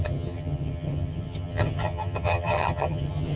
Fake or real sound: fake